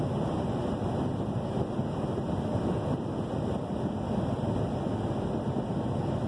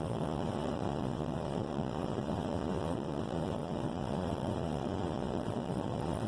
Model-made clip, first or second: second